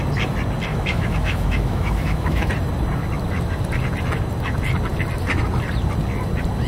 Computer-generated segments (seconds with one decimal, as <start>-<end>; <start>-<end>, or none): 0.7-2.5